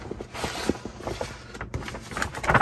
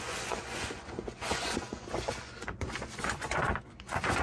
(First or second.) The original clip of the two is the first